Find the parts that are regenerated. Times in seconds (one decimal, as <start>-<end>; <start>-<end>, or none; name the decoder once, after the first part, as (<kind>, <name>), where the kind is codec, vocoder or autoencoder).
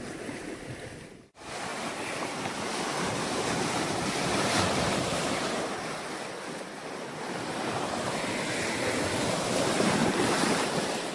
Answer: 1.7-5.8 (vocoder, BigVGAN v2); 10.0-11.1